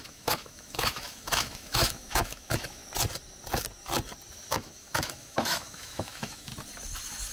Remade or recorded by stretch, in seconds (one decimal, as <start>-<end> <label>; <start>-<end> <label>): 0.0-2.8 remade; 2.8-4.5 recorded; 4.5-6.5 remade; 6.5-7.3 recorded